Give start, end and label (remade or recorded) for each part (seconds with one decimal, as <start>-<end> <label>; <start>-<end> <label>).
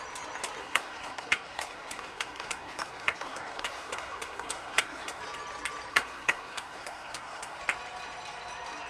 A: 0.0-0.6 recorded; 0.6-5.2 remade; 5.2-5.9 recorded; 5.9-7.6 remade; 7.6-8.9 recorded